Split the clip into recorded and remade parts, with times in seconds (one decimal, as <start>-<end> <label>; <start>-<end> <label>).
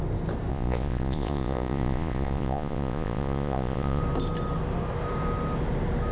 0.0-0.5 recorded; 0.5-4.0 remade; 4.0-6.1 recorded